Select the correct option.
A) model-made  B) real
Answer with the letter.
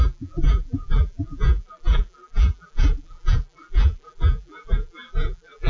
A